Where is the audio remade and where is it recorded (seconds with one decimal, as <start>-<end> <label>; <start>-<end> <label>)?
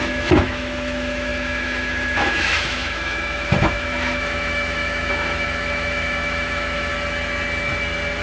0.0-6.9 remade; 6.9-8.2 recorded